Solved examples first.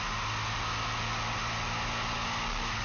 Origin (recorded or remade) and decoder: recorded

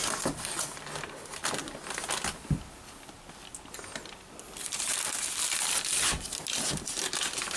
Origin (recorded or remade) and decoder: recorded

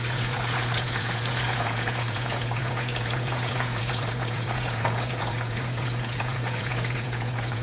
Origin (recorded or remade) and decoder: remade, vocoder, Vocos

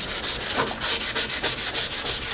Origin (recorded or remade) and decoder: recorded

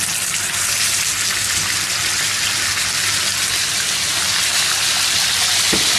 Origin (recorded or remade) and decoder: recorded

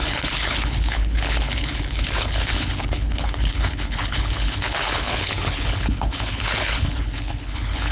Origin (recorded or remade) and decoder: remade, codec, HILCodec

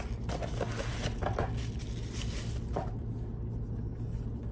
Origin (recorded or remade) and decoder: recorded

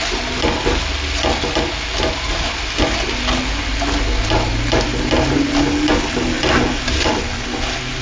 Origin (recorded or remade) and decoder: recorded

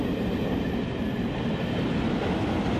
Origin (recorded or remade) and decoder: recorded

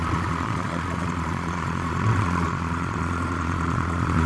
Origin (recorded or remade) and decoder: remade, vocoder, Vocos